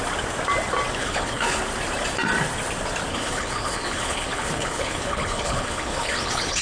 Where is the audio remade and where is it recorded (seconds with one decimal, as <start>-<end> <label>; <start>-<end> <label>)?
0.0-1.0 recorded; 1.0-1.6 remade; 1.6-3.1 recorded; 3.1-6.6 remade

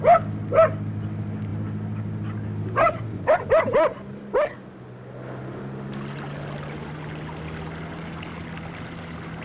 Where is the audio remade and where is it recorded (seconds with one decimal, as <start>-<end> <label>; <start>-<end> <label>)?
0.0-9.4 recorded

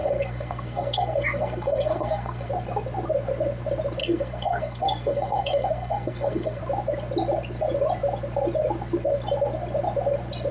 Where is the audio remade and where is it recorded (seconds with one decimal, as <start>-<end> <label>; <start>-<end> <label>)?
0.0-2.5 remade; 2.5-4.0 recorded; 4.0-6.6 remade; 6.6-10.5 recorded

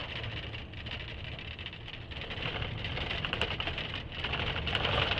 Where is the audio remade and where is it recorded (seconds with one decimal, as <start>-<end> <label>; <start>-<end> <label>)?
0.0-5.2 recorded